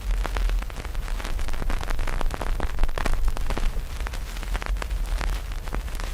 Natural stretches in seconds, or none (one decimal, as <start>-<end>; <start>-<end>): 0.0-6.1